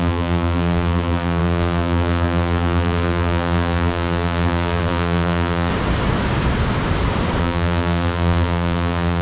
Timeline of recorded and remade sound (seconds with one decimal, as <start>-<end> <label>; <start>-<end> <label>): 0.0-5.7 remade; 5.7-7.4 recorded; 7.4-9.2 remade